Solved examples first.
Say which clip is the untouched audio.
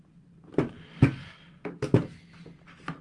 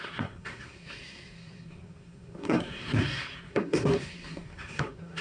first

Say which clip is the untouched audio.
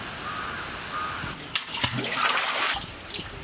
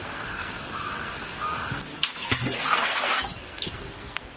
first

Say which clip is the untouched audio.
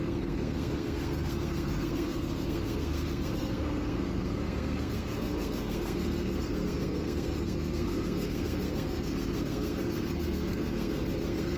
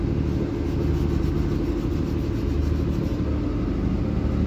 second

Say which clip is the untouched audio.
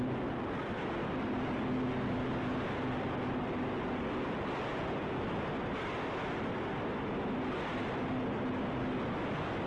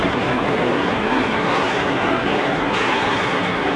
first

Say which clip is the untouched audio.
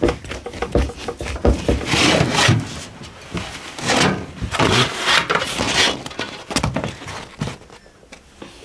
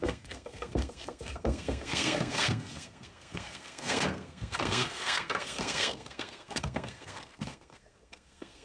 first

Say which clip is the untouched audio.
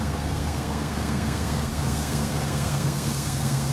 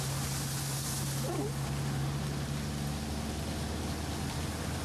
second